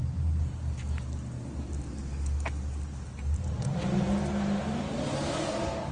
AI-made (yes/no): no